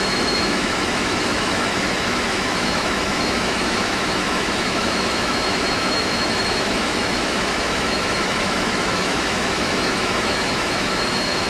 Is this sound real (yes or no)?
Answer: no